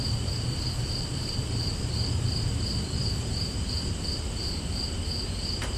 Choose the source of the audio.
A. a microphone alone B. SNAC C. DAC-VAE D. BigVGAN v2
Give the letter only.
D